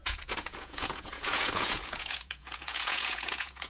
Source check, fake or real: fake